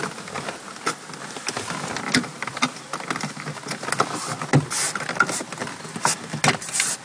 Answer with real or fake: real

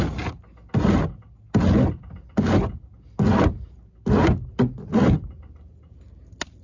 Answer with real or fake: real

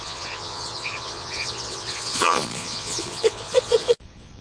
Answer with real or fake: fake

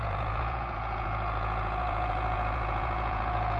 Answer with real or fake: fake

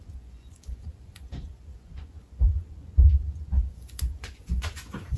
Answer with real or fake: fake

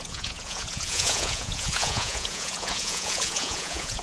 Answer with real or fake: fake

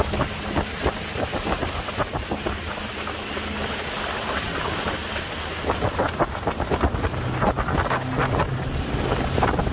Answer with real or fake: real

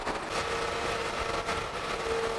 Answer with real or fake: real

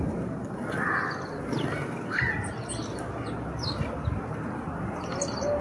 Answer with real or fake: real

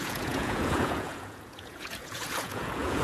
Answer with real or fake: fake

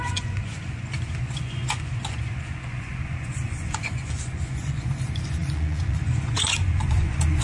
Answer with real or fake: fake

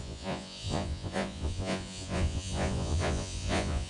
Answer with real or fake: fake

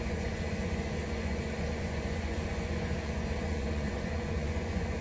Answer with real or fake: fake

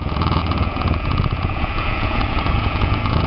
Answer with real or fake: fake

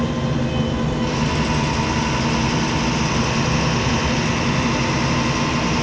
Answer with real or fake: real